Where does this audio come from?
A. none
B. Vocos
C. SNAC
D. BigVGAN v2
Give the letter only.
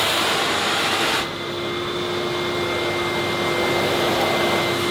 A